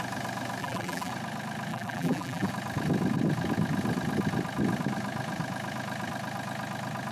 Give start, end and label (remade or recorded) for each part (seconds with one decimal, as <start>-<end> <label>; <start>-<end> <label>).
0.0-0.6 recorded; 0.6-1.1 remade; 1.1-1.7 recorded; 1.7-2.5 remade; 2.5-7.1 recorded